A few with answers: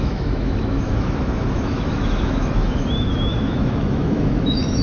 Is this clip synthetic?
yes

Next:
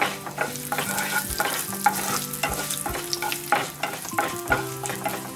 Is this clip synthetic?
no